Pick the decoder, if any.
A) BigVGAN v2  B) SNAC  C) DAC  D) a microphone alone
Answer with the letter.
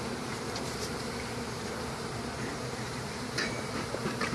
A